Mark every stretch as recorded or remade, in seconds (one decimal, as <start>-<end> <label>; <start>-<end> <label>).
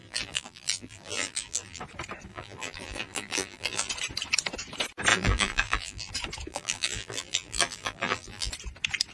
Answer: 0.0-1.8 remade; 1.8-2.3 recorded; 2.3-3.9 remade; 3.9-5.1 recorded; 5.1-6.1 remade; 6.1-6.5 recorded; 6.5-8.5 remade; 8.5-9.1 recorded